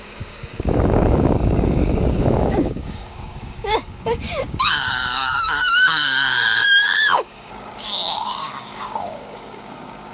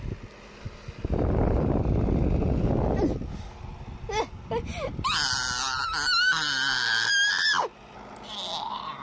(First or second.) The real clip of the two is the second